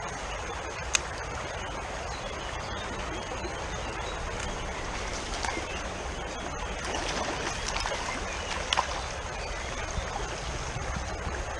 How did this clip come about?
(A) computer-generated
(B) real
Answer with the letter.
B